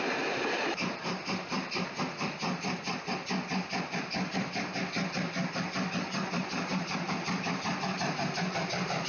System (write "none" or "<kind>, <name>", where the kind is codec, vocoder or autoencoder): none